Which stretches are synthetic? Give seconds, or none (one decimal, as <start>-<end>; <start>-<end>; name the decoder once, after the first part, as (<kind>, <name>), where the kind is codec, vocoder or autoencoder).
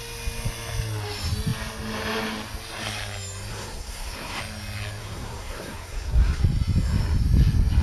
3.5-4.4 (codec, SNAC); 5.0-6.4